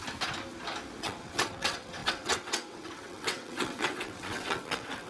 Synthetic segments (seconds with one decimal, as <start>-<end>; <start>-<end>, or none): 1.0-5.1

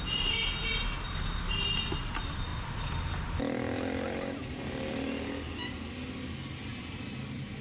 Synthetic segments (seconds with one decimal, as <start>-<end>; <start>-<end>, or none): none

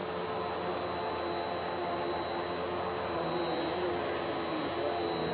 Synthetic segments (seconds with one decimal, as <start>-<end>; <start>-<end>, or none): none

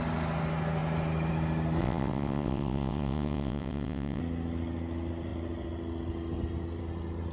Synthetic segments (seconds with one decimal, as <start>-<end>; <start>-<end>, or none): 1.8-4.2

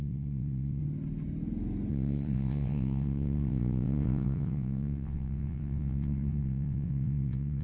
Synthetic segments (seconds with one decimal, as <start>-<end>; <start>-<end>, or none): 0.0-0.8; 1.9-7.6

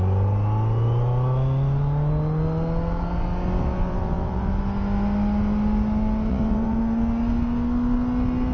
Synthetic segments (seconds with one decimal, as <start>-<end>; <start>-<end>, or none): 3.6-4.5; 6.3-6.8

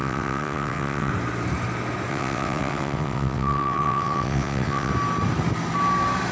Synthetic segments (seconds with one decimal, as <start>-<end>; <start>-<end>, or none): 0.0-1.1; 2.1-4.9